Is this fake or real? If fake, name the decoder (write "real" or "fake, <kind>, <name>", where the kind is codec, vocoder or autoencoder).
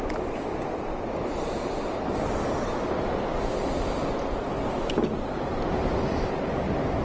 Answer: real